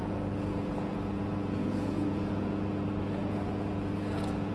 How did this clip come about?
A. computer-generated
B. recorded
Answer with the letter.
A